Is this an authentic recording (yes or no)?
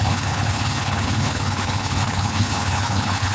no